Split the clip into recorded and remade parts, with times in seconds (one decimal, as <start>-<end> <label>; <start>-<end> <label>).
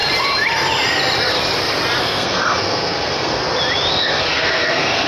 0.0-2.0 recorded; 2.0-3.4 remade; 3.4-3.9 recorded; 3.9-5.1 remade